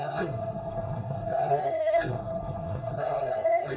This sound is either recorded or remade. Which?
remade